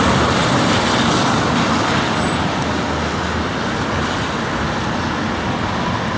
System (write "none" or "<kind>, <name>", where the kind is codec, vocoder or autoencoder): none